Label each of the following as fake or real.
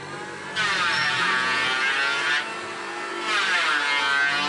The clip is real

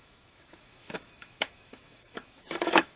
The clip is fake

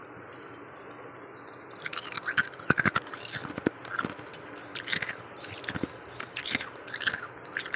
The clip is real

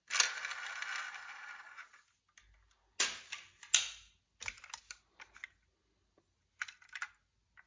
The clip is real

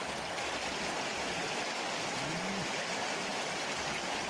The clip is real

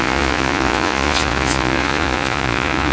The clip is fake